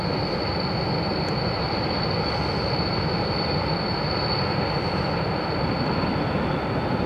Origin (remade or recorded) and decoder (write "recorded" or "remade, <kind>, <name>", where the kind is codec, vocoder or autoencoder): recorded